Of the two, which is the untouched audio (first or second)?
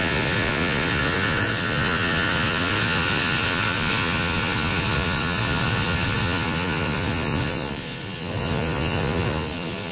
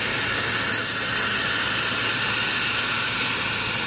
second